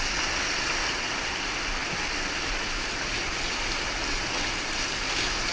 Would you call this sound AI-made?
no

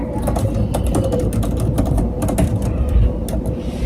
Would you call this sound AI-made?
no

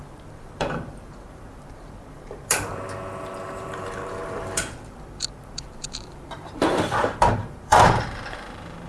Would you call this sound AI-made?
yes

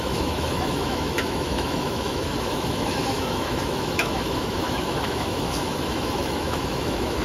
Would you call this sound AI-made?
yes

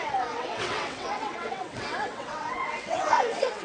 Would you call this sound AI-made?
yes